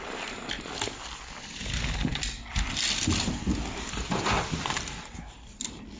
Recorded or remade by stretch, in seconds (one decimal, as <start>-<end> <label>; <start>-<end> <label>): 0.0-6.0 recorded